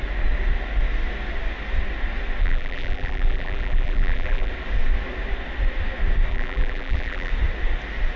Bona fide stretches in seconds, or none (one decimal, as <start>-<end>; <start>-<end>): 0.0-2.4; 4.5-6.3; 7.3-8.2

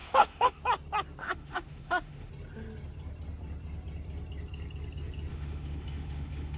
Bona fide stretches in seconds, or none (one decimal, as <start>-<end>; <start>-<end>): 0.6-1.2; 2.3-5.3

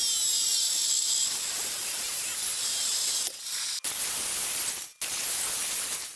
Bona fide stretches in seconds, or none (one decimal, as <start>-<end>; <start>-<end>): 0.0-6.2

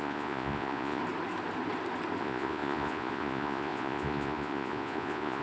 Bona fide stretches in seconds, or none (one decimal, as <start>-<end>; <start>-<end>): 1.0-2.2

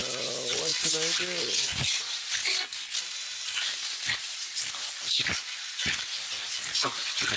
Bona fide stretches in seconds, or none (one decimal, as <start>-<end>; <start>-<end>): 0.0-7.4

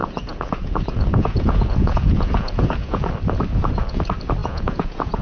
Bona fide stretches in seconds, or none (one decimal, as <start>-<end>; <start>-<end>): 3.1-3.5; 4.0-4.4

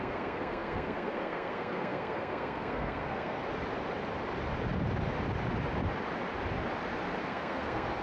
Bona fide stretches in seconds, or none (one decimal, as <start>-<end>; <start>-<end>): 3.4-7.2

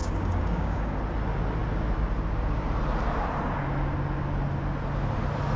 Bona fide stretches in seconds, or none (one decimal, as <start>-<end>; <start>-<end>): 1.0-5.6